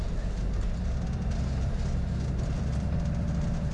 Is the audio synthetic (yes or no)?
no